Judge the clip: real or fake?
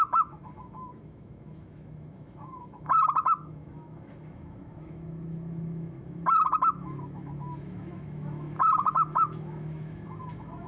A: fake